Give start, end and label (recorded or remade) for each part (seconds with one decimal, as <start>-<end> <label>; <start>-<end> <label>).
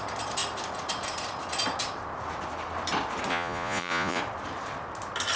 0.0-3.3 recorded; 3.3-4.2 remade; 4.2-5.4 recorded